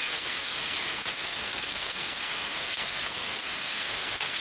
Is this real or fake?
fake